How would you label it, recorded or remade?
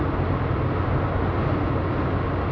recorded